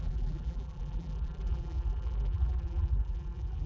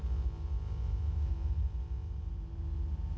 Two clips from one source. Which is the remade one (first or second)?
first